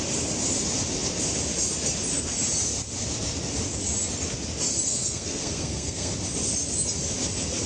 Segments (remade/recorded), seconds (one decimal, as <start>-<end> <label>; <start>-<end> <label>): 0.0-4.9 recorded; 4.9-6.1 remade; 6.1-7.7 recorded